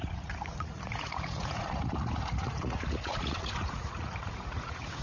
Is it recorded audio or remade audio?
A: remade